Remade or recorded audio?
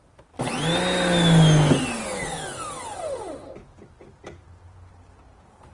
recorded